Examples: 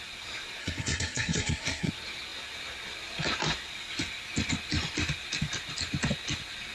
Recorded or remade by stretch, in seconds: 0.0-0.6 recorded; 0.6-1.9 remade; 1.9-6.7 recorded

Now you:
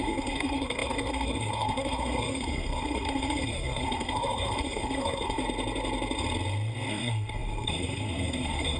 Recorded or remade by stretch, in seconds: 0.0-5.4 remade; 5.4-6.9 recorded; 6.9-8.8 remade

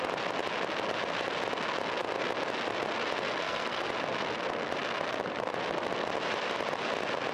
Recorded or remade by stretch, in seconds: 0.0-3.4 recorded; 3.4-3.9 remade; 3.9-7.3 recorded

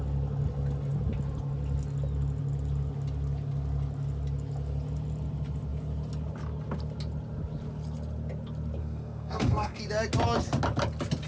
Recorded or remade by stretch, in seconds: 0.0-8.8 recorded; 8.8-9.8 remade; 9.8-11.3 recorded

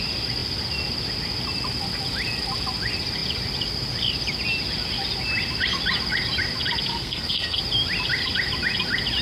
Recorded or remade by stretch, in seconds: 0.0-6.9 recorded; 6.9-7.6 remade; 7.6-9.2 recorded

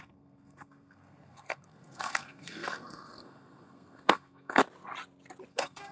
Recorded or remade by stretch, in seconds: 0.0-4.6 remade; 4.6-5.5 recorded; 5.5-5.9 remade